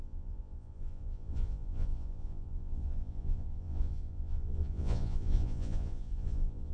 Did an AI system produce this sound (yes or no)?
yes